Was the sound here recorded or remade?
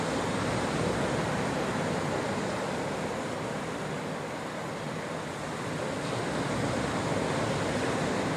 remade